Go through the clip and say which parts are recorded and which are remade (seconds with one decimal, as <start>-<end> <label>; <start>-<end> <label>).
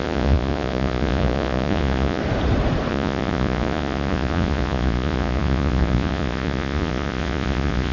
0.0-2.2 remade; 2.2-2.9 recorded; 2.9-7.9 remade